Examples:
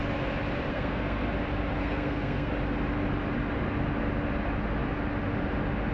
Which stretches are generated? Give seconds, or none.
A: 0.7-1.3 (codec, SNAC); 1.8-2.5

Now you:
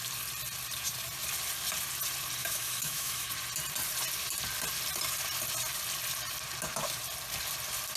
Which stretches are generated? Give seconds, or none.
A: 2.4-3.3 (autoencoder, DAC-VAE)

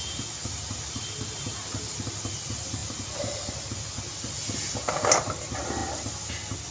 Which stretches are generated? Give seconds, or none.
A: none